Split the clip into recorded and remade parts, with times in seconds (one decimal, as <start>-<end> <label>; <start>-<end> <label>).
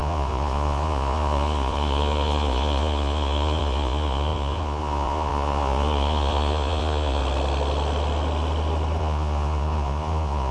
0.0-7.2 remade; 7.2-9.0 recorded; 9.0-10.5 remade